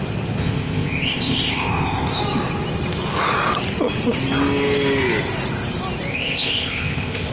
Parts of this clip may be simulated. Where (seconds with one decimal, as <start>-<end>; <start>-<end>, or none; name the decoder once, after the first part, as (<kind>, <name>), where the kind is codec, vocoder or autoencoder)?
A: 0.4-2.2 (codec, ZipCodec); 6.1-7.3